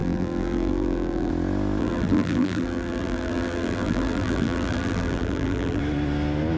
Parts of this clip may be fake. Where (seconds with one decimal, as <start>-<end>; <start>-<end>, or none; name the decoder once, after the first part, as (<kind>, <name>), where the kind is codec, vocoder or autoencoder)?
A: 0.0-1.3 (vocoder, BigVGAN v2); 1.8-5.8